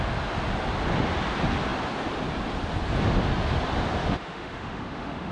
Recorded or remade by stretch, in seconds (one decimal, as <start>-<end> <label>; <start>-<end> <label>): 0.0-4.0 recorded; 4.0-5.3 remade